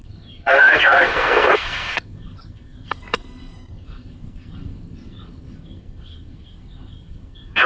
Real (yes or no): no